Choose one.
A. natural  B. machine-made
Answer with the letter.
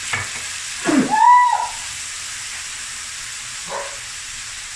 A